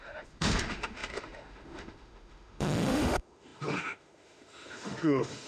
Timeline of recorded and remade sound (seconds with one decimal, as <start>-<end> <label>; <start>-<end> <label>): 0.0-5.5 remade